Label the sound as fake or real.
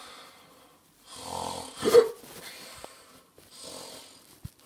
real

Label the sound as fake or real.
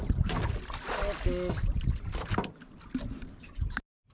real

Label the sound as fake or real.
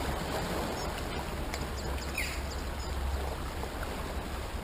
real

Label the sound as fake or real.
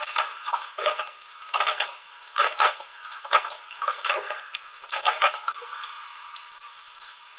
fake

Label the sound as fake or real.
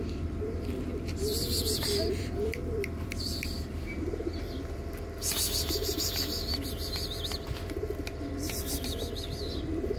fake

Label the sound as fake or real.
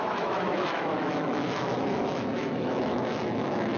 fake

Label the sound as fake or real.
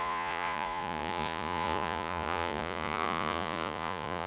fake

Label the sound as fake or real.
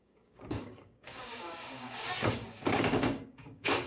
fake